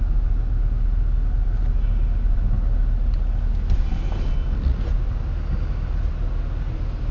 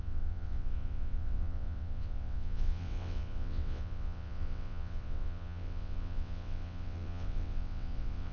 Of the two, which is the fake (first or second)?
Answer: second